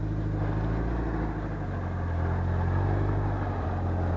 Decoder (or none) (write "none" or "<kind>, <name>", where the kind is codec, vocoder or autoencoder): none